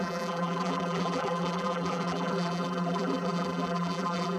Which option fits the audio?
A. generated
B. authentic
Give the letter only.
A